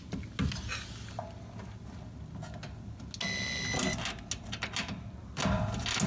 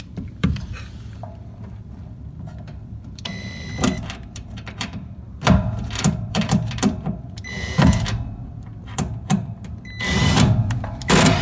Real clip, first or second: first